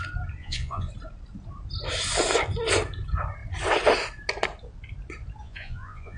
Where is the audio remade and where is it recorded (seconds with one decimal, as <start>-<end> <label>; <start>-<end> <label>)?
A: 0.0-0.4 recorded; 0.4-0.9 remade; 0.9-5.4 recorded; 5.4-6.2 remade

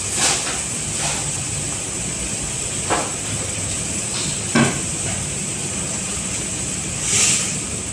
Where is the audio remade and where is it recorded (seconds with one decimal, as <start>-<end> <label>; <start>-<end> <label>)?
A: 0.0-7.9 recorded

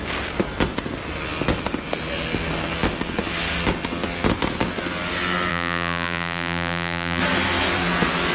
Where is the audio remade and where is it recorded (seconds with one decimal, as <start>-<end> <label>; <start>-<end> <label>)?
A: 0.0-5.5 recorded; 5.5-7.2 remade; 7.2-8.3 recorded

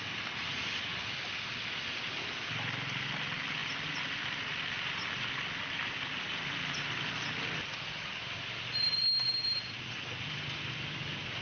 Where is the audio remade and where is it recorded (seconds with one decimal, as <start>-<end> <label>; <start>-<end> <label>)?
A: 0.0-11.4 recorded